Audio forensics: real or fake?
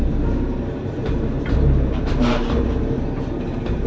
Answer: fake